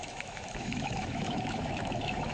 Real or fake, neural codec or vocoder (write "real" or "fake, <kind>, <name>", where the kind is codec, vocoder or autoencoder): fake, autoencoder, DAC-VAE